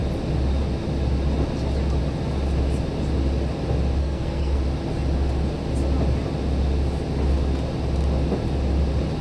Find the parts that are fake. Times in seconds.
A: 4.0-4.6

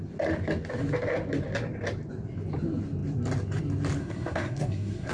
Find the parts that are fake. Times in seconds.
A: 4.0-5.1